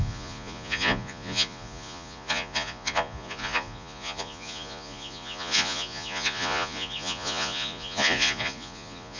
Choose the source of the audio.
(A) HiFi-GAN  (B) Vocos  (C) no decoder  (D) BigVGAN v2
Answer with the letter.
B